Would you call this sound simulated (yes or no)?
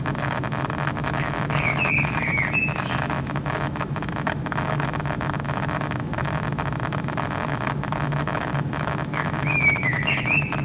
yes